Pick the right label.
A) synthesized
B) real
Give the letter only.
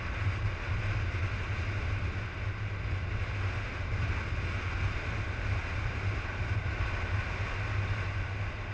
B